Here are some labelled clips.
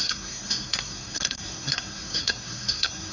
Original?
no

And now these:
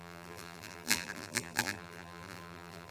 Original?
no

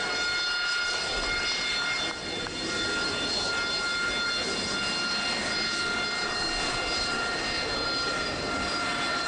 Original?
yes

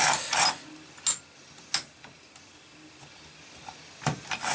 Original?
yes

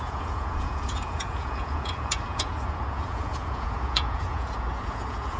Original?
no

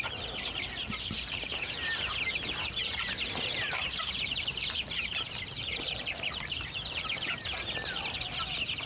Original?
no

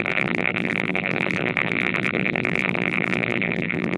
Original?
no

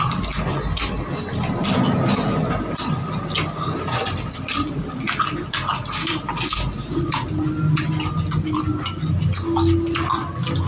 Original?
yes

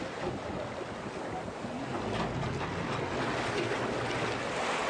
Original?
yes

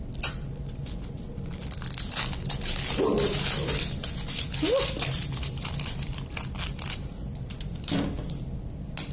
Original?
yes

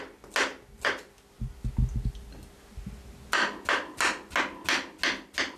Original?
yes